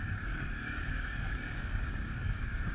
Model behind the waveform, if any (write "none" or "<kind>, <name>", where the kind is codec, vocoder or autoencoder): codec, DAC